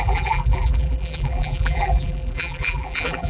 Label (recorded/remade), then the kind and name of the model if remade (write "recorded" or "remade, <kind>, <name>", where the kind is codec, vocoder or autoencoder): remade, vocoder, BigVGAN v2